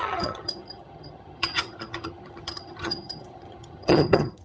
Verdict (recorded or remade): remade